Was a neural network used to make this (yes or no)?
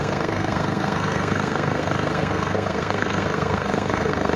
yes